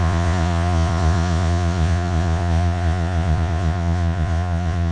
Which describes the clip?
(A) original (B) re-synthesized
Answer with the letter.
B